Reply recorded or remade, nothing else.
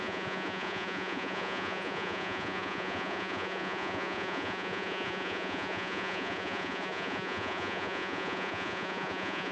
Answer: remade